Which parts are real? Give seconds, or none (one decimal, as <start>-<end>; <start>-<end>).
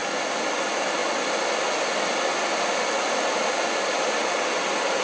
0.0-0.6; 1.0-3.8